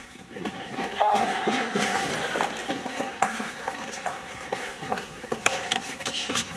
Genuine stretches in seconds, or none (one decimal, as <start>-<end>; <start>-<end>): 2.1-2.7